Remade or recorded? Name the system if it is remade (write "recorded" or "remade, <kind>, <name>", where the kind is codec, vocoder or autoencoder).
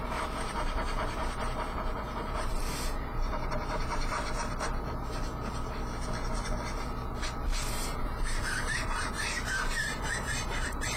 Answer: remade, vocoder, BigVGAN v2